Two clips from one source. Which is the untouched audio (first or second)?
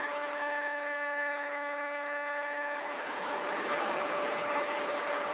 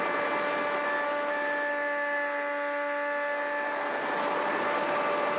second